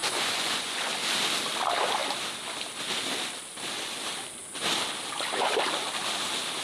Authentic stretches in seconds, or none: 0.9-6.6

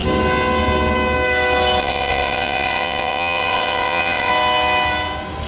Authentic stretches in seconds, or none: 0.0-1.8; 4.3-5.5

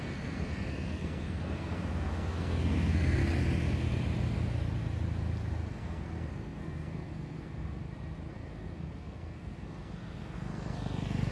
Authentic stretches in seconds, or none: 3.2-5.7; 7.8-8.3

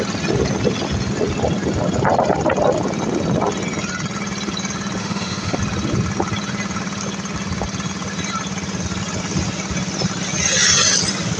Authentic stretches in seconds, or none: 0.0-5.0; 5.6-11.4

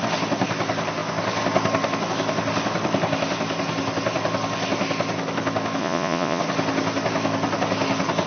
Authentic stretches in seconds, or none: 0.0-5.8; 6.4-8.3

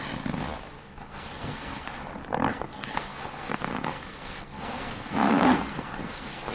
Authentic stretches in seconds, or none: 0.0-0.8; 2.0-2.5